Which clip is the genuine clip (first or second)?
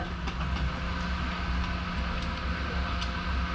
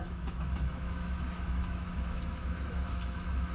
first